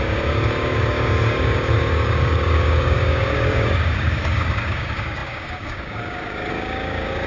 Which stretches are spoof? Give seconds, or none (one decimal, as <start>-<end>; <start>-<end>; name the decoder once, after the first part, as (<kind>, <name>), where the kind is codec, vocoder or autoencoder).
0.0-7.3 (codec, DAC)